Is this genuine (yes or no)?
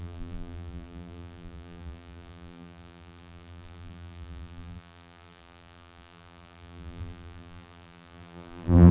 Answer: no